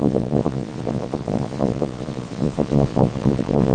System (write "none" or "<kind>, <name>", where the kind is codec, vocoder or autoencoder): vocoder, Vocos